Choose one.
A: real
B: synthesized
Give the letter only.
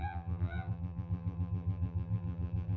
B